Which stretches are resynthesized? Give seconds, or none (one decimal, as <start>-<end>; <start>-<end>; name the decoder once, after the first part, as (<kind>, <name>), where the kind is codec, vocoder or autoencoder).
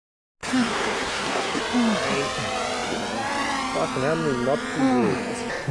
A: 0.4-1.6 (codec, SNAC)